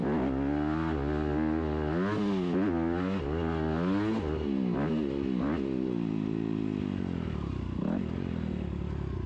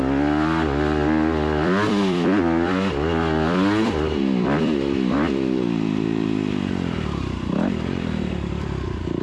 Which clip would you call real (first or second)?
first